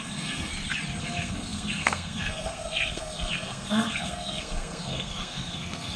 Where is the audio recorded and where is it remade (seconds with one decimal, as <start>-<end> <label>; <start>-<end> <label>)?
0.0-0.5 remade; 0.5-1.0 recorded; 1.0-6.0 remade